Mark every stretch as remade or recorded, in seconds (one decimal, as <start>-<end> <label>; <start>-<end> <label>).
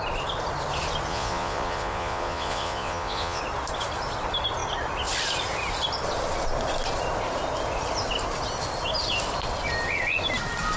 0.0-1.1 recorded; 1.1-3.4 remade; 3.4-10.8 recorded